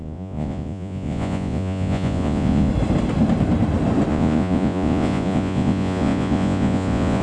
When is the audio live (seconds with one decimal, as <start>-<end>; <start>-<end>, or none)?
2.7-4.1